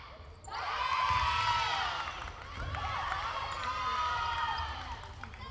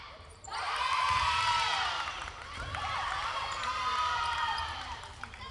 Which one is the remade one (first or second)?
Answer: second